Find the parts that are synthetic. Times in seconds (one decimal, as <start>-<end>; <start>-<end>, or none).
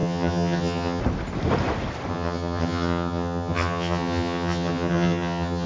0.0-1.0; 2.1-5.7